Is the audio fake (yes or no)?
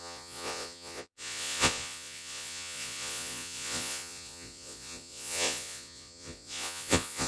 yes